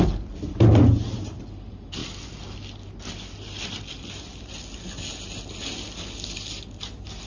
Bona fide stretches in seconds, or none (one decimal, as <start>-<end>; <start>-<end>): 0.0-7.3